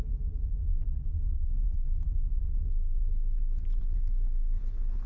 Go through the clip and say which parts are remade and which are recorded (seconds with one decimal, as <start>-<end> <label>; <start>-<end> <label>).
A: 0.0-5.1 recorded